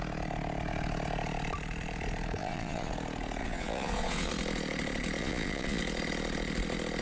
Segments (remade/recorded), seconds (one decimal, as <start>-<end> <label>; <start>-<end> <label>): 0.0-2.4 recorded; 2.4-2.9 remade; 2.9-3.4 recorded; 3.4-4.3 remade; 4.3-5.2 recorded; 5.2-5.8 remade; 5.8-7.0 recorded